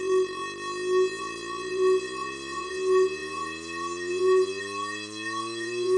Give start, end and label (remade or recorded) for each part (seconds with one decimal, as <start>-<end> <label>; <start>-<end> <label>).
0.0-0.4 remade; 0.4-1.2 recorded; 1.2-6.0 remade